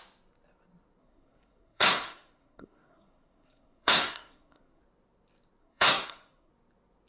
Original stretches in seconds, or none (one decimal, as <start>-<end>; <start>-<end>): 0.0-1.0; 4.8-5.6; 6.5-7.1